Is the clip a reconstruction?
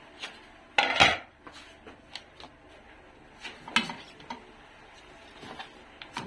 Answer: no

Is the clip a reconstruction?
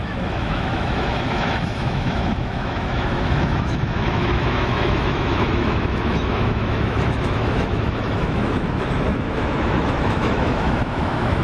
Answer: yes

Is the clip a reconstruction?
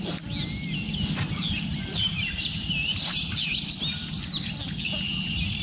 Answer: no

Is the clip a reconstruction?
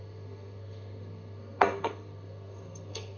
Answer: yes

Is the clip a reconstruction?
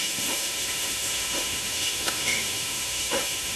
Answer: yes